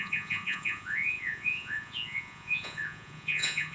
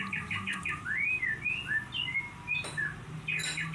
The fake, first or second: first